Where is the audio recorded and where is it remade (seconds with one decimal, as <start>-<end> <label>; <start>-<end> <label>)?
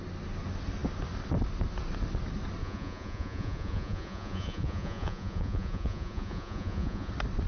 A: 0.0-2.6 recorded; 2.6-7.1 remade; 7.1-7.5 recorded